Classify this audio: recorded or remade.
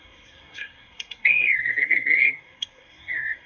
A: remade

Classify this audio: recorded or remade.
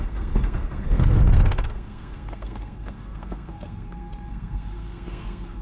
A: remade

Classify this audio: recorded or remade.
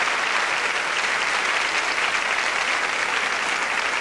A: recorded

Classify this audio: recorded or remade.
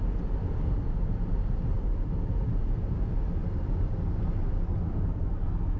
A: recorded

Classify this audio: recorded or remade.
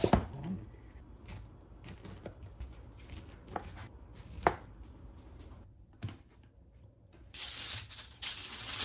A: recorded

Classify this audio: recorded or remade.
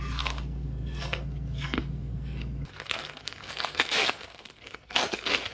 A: remade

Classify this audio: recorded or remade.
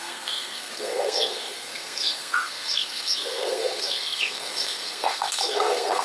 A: remade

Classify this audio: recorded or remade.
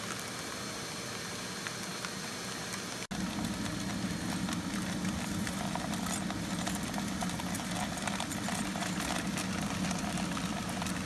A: recorded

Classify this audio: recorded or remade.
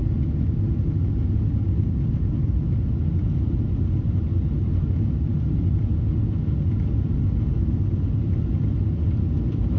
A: recorded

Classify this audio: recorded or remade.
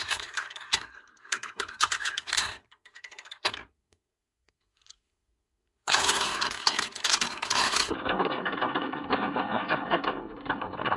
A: remade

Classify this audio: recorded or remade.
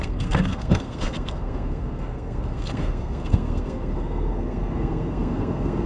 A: remade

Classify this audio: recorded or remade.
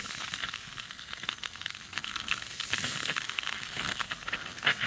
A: remade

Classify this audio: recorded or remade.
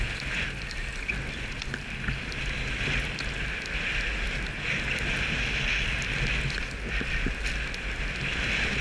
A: recorded